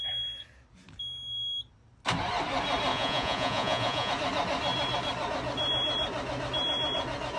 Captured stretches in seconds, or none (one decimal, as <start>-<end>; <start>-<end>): 0.0-2.9; 4.1-7.4